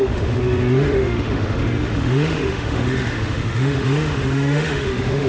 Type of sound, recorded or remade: remade